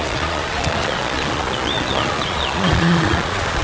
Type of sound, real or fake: fake